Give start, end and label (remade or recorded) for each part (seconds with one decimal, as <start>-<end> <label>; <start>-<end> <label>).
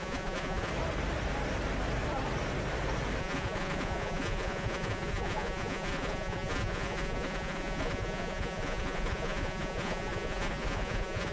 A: 0.0-0.7 remade; 0.7-3.2 recorded; 3.2-11.3 remade